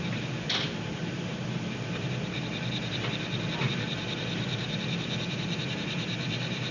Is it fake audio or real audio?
real